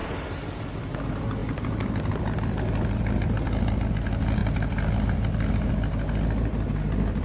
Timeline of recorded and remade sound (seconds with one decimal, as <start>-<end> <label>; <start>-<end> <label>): 0.0-7.2 recorded

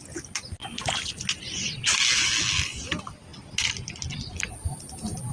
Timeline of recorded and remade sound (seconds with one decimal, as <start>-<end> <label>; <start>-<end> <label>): 0.0-5.3 recorded